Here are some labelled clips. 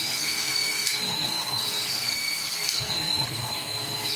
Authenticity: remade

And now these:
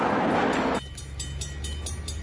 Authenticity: recorded